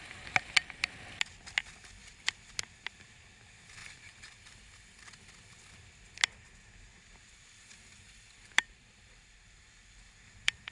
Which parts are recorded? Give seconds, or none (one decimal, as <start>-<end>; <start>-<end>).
0.0-2.0; 2.5-3.8; 5.5-6.9